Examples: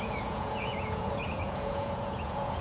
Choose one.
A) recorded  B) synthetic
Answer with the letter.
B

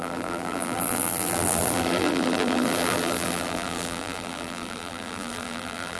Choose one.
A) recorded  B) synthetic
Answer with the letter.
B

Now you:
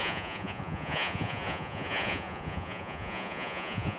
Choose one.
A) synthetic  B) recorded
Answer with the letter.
A